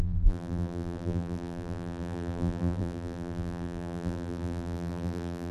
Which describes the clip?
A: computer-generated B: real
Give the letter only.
A